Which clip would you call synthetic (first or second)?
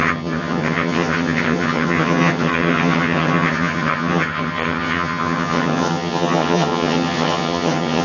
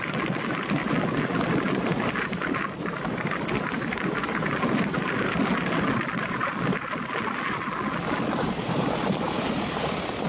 first